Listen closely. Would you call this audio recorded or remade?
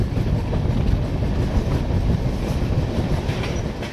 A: recorded